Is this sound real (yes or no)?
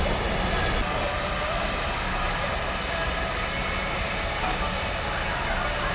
yes